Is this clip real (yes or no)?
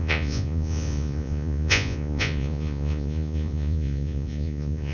no